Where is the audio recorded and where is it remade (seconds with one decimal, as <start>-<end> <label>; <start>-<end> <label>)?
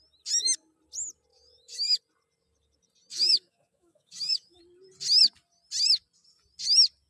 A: 0.0-1.3 recorded; 1.3-2.0 remade; 2.0-3.1 recorded; 3.1-4.6 remade; 4.6-7.1 recorded